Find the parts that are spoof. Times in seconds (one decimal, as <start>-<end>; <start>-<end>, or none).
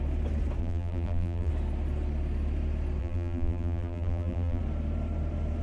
0.6-1.5; 3.0-4.6